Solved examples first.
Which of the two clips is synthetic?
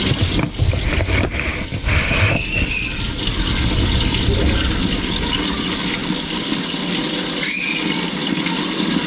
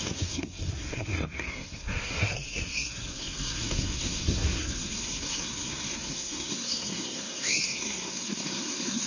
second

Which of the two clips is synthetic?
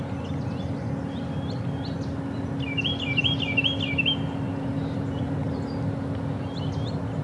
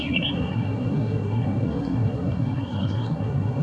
second